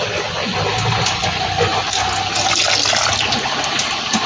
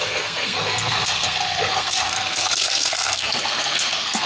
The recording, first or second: first